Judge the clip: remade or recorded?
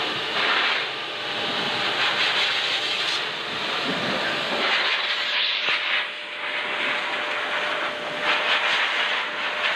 recorded